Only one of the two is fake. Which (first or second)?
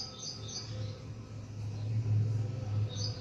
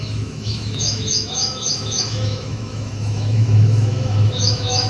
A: second